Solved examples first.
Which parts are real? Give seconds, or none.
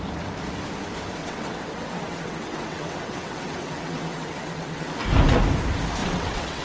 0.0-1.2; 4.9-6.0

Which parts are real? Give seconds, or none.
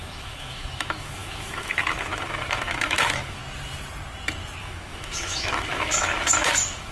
3.4-4.6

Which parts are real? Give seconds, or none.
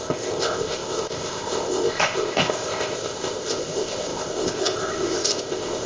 none